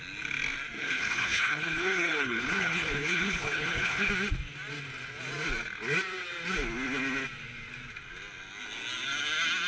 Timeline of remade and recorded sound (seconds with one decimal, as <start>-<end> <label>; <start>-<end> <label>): 0.0-0.8 recorded; 0.8-4.1 remade; 4.1-9.7 recorded